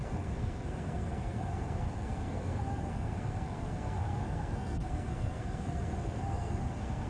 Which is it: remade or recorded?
remade